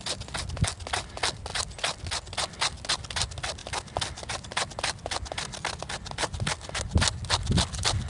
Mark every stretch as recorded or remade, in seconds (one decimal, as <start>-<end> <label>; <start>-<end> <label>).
0.0-8.1 recorded